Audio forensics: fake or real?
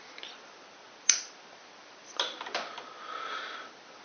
real